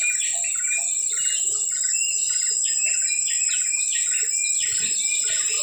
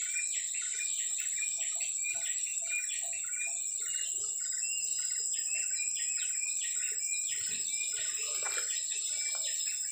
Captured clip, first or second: second